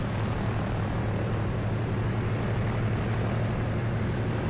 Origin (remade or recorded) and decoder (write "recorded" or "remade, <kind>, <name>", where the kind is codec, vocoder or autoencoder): recorded